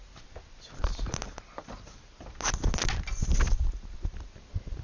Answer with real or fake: real